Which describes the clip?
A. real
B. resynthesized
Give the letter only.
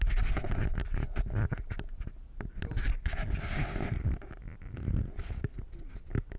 A